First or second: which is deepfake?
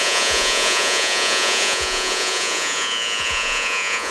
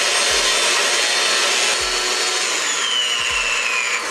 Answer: first